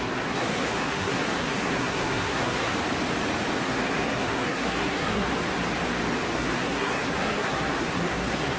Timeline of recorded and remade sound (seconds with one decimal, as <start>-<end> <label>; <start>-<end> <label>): 0.0-2.7 remade; 2.7-3.6 recorded; 3.6-5.3 remade; 5.3-6.3 recorded; 6.3-8.6 remade